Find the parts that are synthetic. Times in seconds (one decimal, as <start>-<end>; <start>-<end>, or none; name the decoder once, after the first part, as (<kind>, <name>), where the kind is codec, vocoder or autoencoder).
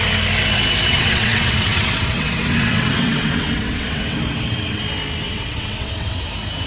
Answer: 0.9-4.8 (vocoder, WaveNeXt); 5.2-6.2